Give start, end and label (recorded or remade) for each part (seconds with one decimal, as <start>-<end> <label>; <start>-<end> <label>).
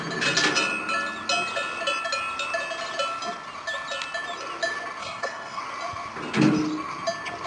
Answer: 0.0-5.0 recorded; 5.0-5.6 remade; 5.6-7.5 recorded